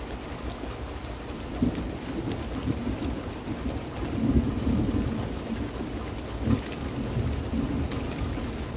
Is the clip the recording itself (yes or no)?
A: yes